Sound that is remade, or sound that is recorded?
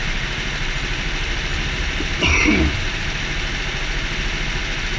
recorded